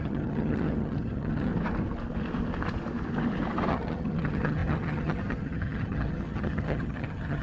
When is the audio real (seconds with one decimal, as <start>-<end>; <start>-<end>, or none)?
1.5-3.7